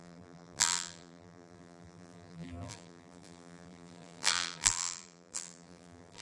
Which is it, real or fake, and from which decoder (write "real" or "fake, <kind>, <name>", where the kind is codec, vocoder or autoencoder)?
fake, vocoder, BigVGAN v2